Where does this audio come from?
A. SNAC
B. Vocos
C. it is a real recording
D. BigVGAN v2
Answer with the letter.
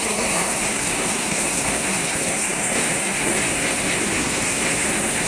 A